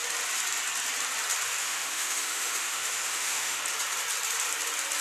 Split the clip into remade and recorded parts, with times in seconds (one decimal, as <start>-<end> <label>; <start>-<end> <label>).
0.0-1.6 recorded; 1.6-3.6 remade; 3.6-5.0 recorded